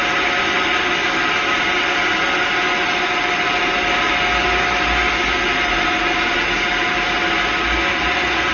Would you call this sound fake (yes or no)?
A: no